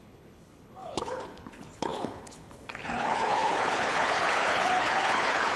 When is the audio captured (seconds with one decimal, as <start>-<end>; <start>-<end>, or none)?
none